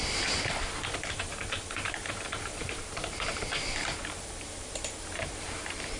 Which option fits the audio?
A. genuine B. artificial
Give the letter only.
B